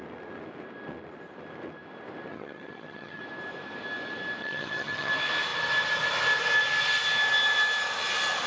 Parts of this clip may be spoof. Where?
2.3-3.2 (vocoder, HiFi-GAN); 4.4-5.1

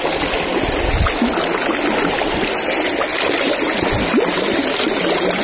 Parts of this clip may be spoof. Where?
none

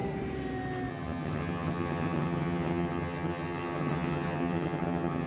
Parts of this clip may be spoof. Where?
0.9-5.3 (vocoder, HiFi-GAN)

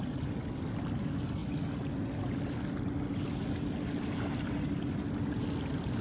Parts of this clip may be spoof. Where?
none

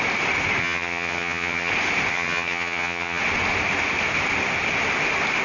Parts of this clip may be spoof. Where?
0.6-1.7 (vocoder, HiFi-GAN); 2.1-3.2

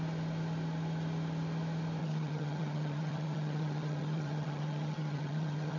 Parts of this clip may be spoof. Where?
2.0-5.8 (vocoder, HiFi-GAN)

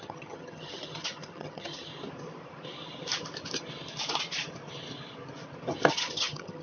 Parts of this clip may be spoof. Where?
0.0-1.9 (vocoder, HiFi-GAN); 5.9-6.6